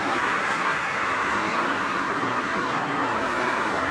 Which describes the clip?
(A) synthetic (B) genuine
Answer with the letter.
A